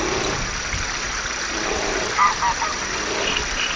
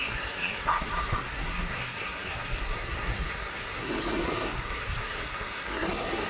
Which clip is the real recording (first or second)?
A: first